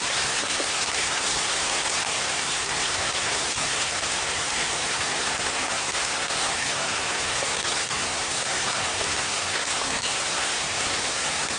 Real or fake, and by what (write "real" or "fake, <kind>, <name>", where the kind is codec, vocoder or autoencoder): fake, codec, SNAC